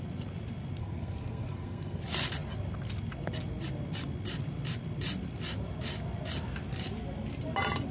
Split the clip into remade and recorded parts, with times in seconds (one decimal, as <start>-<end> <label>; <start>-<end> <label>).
0.0-0.8 recorded; 0.8-2.0 remade; 2.0-7.9 recorded